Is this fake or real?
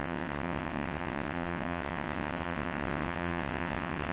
fake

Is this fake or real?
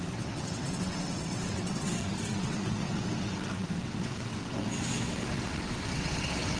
fake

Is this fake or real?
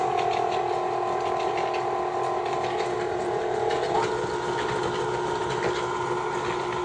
real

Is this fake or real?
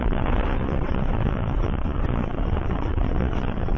fake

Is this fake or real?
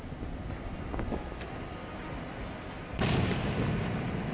real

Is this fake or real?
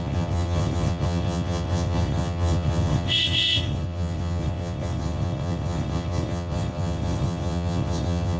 fake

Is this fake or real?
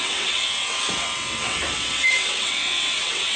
fake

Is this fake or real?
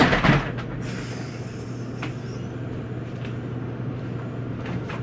real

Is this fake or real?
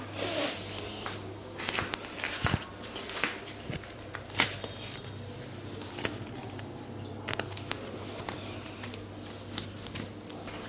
real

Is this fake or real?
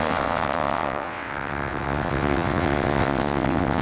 fake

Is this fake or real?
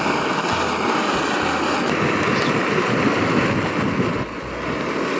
real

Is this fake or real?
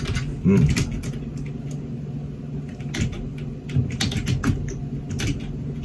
real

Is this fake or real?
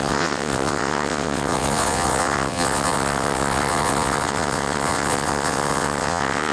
fake